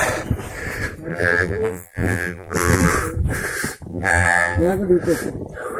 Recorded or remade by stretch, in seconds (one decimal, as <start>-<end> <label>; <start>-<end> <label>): 0.0-1.1 recorded; 1.1-2.9 remade; 2.9-3.9 recorded; 3.9-4.7 remade; 4.7-5.8 recorded

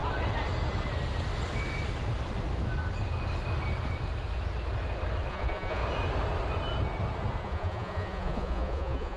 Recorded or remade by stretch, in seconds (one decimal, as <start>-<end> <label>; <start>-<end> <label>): 0.0-5.3 recorded; 5.3-5.8 remade; 5.8-7.4 recorded; 7.4-9.2 remade

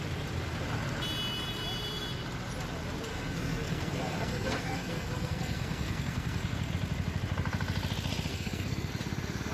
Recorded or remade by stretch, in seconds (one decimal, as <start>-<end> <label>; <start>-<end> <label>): 0.0-3.1 recorded; 3.1-6.7 remade; 6.7-8.3 recorded; 8.3-8.9 remade; 8.9-9.5 recorded

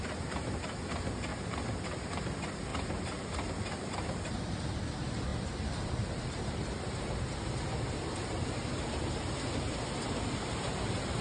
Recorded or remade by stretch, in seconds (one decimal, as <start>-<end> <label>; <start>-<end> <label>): 0.0-1.3 recorded; 1.3-2.2 remade; 2.2-2.7 recorded; 2.7-4.8 remade; 4.8-5.3 recorded; 5.3-7.9 remade; 7.9-11.2 recorded

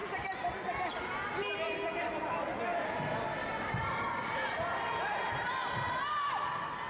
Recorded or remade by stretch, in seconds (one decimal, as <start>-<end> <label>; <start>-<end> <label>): 0.0-6.9 recorded

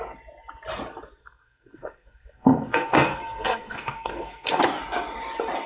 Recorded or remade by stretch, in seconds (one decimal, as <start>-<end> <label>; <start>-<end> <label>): 0.0-1.2 recorded; 1.2-4.6 remade; 4.6-5.7 recorded

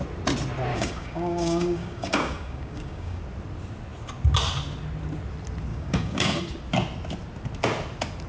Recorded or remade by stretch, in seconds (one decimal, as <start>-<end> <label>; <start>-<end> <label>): 0.0-0.7 recorded; 0.7-3.2 remade; 3.2-5.7 recorded; 5.7-6.4 remade; 6.4-8.3 recorded